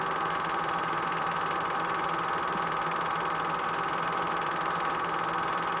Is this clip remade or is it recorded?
recorded